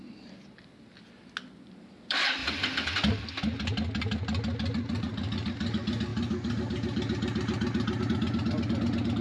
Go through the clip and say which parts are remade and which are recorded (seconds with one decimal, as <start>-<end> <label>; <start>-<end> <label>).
0.0-9.2 recorded

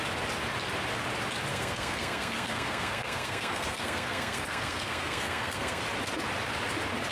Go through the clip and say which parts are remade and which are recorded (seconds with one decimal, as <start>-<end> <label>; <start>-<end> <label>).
0.0-1.5 recorded; 1.5-5.8 remade; 5.8-7.1 recorded